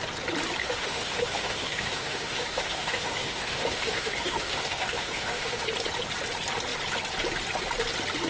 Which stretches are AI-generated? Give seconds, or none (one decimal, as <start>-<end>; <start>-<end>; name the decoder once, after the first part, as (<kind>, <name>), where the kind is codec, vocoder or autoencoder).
0.6-5.6 (autoencoder, DAC-VAE)